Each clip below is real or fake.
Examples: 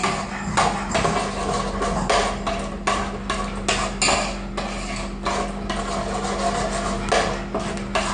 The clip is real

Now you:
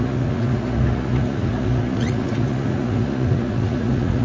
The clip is fake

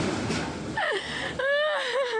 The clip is real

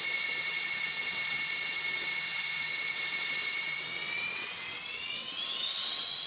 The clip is fake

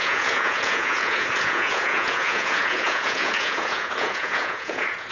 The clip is fake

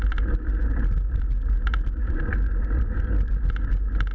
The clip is real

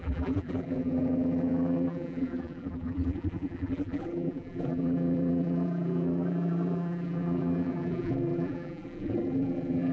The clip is fake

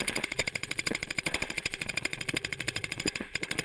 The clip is fake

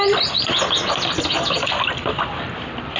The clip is real